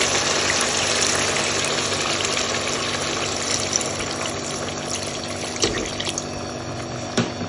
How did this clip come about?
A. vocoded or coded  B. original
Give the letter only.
B